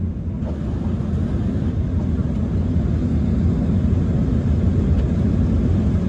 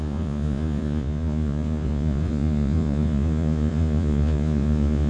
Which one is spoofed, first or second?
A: second